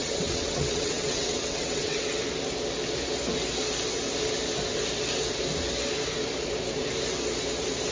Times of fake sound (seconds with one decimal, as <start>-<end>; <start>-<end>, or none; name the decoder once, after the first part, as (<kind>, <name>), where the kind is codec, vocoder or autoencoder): 0.0-2.1 (vocoder, WaveNeXt)